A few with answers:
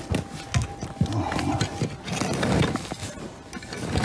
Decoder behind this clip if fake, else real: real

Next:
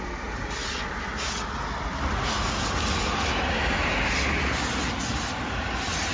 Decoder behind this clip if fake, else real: real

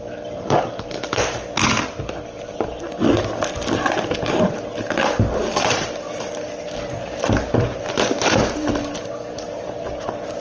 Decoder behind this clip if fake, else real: fake, vocoder, BigVGAN v2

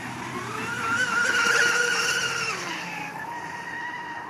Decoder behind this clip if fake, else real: fake, vocoder, BigVGAN v2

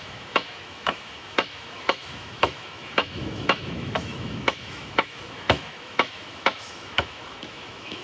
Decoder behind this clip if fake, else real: fake, autoencoder, DAC-VAE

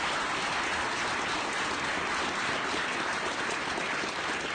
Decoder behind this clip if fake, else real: real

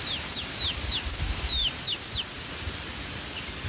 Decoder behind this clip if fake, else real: real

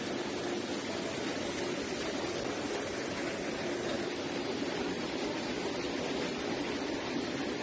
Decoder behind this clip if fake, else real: real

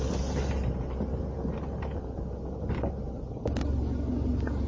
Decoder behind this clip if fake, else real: real